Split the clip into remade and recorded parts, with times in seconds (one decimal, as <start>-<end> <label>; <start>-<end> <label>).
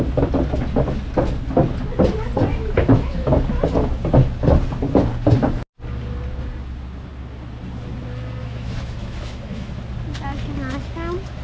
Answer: 0.0-2.6 recorded; 2.6-3.3 remade; 3.3-8.4 recorded; 8.4-9.8 remade; 9.8-11.4 recorded